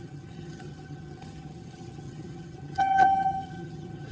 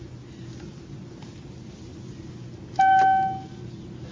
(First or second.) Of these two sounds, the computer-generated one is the first